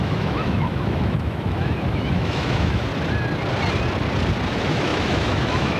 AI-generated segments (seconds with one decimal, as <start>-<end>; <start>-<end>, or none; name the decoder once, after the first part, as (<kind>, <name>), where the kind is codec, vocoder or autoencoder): 0.0-2.9 (autoencoder, DAC-VAE); 4.5-5.8